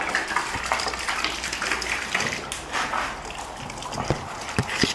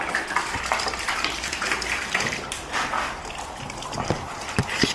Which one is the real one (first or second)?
first